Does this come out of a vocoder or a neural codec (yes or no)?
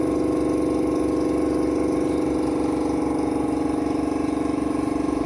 no